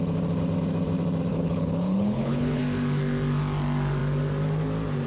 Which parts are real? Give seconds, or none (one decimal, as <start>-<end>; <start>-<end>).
0.0-1.3; 2.6-5.1